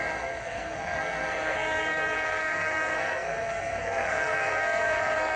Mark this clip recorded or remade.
remade